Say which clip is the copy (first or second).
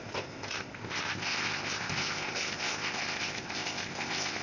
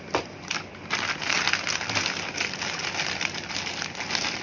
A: first